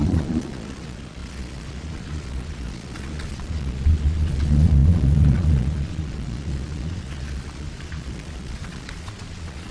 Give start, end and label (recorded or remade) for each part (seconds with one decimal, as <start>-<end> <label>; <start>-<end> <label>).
0.0-9.7 remade